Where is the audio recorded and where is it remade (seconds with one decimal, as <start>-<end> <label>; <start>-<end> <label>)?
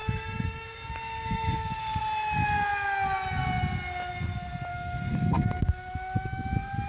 0.0-2.0 remade; 2.0-4.7 recorded; 4.7-5.9 remade; 5.9-6.9 recorded